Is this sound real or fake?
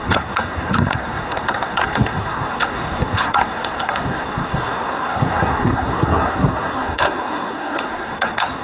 fake